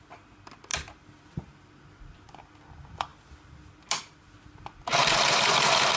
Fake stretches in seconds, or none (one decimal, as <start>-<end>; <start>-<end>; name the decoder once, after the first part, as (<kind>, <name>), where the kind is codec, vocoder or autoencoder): none